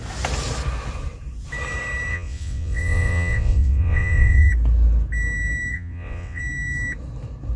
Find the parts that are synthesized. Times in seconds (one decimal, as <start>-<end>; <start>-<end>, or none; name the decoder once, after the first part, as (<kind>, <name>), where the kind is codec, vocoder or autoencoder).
2.1-4.5 (vocoder, WaveNeXt); 5.7-6.4